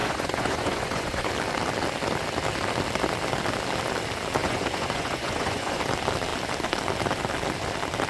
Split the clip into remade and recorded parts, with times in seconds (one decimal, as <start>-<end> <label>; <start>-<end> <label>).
0.0-1.3 remade; 1.3-4.4 recorded; 4.4-5.8 remade; 5.8-8.1 recorded